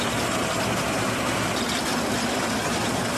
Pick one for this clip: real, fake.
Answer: real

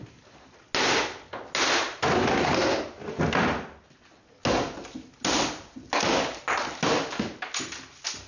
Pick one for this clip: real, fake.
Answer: real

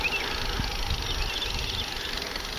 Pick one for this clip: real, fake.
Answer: real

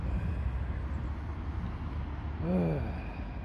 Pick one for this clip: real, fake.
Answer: real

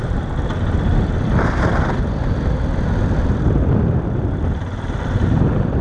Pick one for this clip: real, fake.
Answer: real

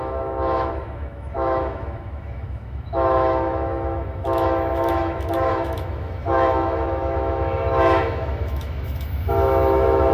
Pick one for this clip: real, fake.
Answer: fake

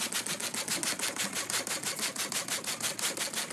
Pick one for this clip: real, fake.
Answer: real